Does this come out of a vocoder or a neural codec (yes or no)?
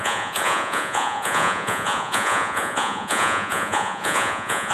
yes